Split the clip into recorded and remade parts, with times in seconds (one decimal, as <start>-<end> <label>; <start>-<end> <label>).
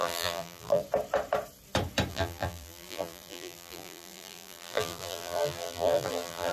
0.0-0.8 remade; 0.8-2.1 recorded; 2.1-6.5 remade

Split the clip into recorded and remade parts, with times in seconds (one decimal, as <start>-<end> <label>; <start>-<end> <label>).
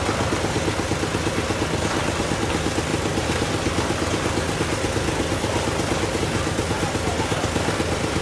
0.0-8.2 recorded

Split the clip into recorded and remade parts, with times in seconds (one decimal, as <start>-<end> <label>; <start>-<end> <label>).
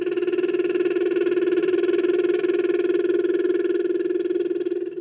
0.0-1.6 recorded; 1.6-2.4 remade; 2.4-5.0 recorded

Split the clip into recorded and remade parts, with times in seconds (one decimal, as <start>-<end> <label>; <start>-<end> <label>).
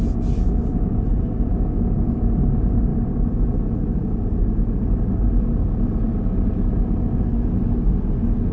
0.0-0.6 recorded; 0.6-1.1 remade; 1.1-8.5 recorded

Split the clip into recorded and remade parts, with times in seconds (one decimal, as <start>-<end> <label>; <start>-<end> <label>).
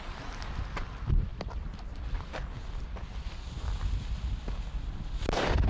0.0-5.7 recorded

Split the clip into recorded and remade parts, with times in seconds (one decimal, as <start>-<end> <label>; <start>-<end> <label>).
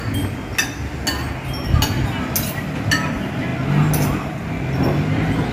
0.0-5.5 recorded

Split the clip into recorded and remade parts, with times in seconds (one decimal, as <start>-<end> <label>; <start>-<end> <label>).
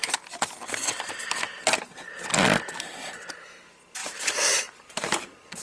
0.0-4.0 recorded; 4.0-5.6 remade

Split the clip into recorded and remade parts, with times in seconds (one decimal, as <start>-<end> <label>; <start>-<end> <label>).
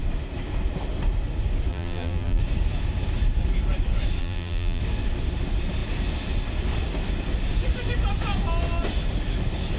0.0-1.7 recorded; 1.7-2.4 remade; 2.4-4.2 recorded; 4.2-4.8 remade; 4.8-9.8 recorded